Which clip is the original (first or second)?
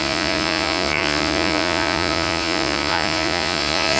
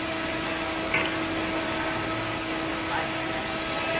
second